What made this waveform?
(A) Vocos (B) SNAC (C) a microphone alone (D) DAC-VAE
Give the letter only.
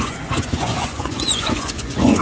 A